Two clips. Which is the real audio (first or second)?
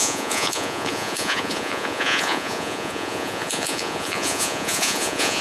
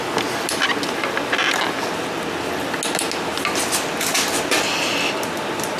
second